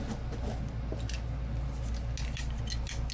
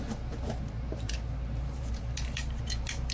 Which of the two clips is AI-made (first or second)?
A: second